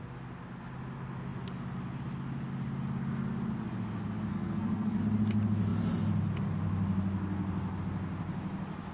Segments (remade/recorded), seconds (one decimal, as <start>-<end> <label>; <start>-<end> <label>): 0.0-4.3 recorded; 4.3-5.0 remade; 5.0-8.9 recorded